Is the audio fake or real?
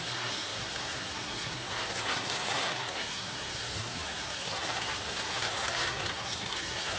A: fake